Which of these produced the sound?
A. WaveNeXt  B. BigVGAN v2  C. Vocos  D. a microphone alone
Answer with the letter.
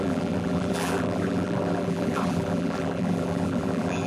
B